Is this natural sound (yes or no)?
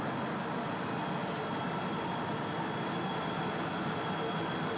yes